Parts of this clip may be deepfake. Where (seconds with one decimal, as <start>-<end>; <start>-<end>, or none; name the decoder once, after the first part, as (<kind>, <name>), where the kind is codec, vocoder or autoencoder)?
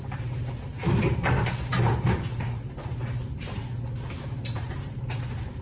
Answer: 0.0-0.7 (vocoder, BigVGAN v2); 1.6-3.6; 4.5-5.6